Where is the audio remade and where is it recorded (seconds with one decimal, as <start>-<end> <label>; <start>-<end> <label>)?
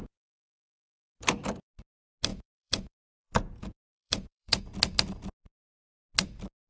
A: 0.0-2.3 recorded; 2.3-4.6 remade; 4.6-6.7 recorded